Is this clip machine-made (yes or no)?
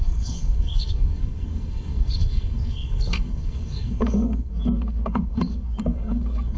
yes